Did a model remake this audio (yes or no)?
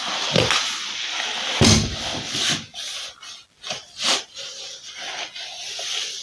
no